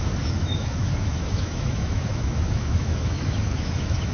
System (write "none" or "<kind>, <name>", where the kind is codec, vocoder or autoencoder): autoencoder, DAC-VAE